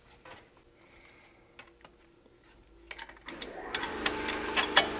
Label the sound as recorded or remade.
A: recorded